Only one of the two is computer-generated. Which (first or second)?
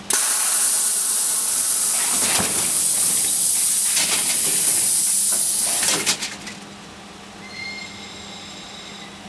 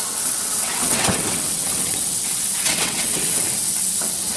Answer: second